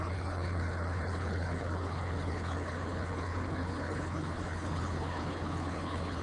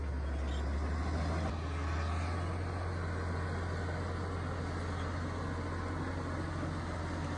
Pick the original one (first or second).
second